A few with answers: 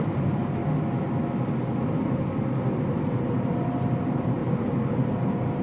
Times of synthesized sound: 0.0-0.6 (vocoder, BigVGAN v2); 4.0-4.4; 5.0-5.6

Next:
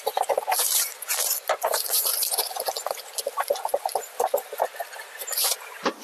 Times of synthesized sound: 0.0-6.0 (vocoder, BigVGAN v2)

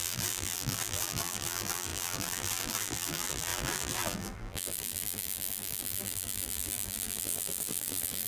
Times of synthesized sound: 0.0-8.3 (vocoder, BigVGAN v2)

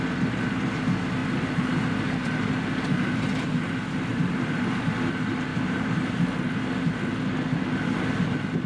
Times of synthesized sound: 4.1-4.9 (vocoder, BigVGAN v2); 5.5-6.2

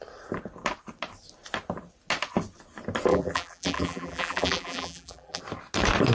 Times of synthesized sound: 3.1-5.4 (vocoder, BigVGAN v2)

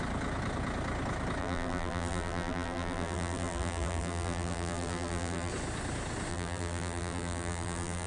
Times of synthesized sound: 1.4-5.5 (vocoder, BigVGAN v2); 6.3-8.1

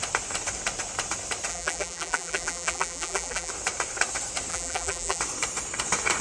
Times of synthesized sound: 1.5-3.5 (vocoder, BigVGAN v2); 4.5-5.2

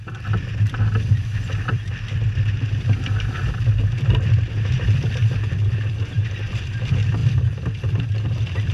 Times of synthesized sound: 0.0-8.7 (vocoder, BigVGAN v2)